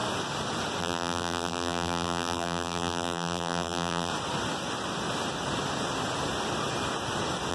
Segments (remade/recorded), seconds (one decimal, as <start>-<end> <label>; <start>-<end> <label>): 0.0-0.8 recorded; 0.8-4.1 remade; 4.1-7.5 recorded